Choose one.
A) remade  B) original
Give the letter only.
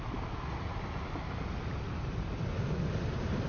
B